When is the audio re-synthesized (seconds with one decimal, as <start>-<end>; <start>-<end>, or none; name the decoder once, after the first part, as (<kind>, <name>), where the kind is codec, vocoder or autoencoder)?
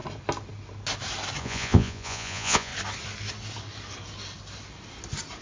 1.4-2.7 (vocoder, Vocos)